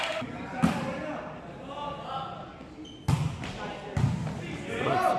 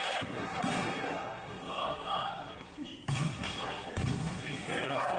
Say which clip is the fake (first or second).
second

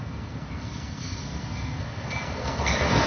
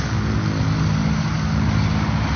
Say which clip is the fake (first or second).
first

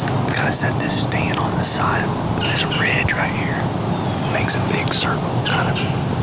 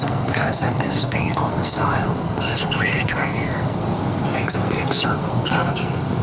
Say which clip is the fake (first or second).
second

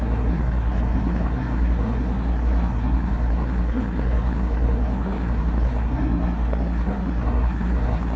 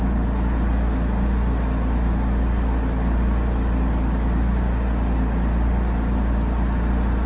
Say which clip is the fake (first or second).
first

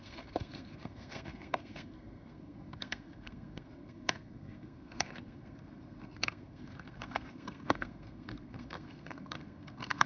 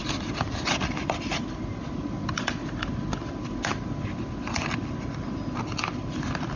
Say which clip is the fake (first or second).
first